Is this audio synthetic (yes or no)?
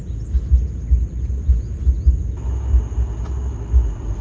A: no